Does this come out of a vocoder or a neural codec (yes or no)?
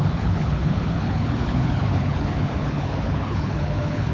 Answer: yes